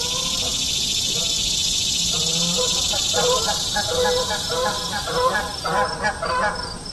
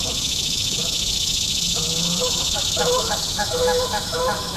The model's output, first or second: second